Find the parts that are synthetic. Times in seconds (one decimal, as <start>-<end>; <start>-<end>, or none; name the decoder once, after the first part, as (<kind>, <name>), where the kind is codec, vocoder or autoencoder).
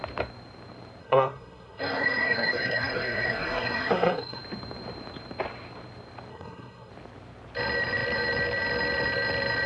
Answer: 1.0-4.4 (codec, SNAC); 6.3-6.9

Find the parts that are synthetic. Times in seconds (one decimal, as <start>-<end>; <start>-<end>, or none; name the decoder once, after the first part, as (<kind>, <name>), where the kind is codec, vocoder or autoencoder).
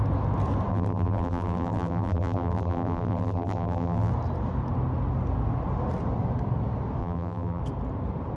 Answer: 0.7-4.1 (vocoder, BigVGAN v2); 7.0-7.6